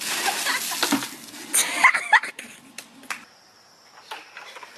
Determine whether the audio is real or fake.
real